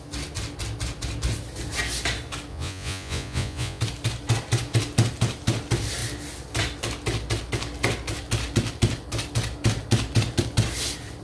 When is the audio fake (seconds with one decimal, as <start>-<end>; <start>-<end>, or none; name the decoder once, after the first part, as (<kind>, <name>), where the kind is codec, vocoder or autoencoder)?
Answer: 2.5-3.8 (vocoder, Vocos)